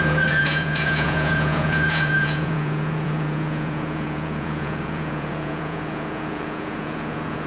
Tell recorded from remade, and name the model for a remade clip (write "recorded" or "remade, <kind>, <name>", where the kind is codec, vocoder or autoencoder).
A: remade, vocoder, Vocos